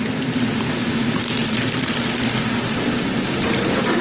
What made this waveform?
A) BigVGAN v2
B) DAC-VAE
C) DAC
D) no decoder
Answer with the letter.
D